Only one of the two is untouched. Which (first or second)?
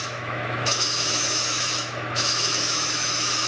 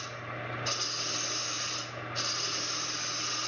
second